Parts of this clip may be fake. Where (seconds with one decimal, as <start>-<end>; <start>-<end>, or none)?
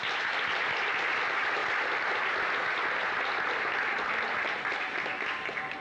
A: none